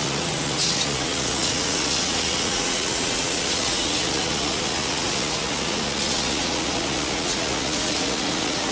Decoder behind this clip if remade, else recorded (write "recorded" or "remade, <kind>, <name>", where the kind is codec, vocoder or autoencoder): remade, vocoder, Vocos